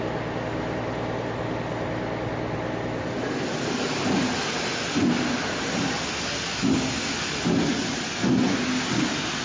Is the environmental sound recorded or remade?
recorded